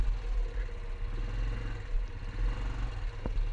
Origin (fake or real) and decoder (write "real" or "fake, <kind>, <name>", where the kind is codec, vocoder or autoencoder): real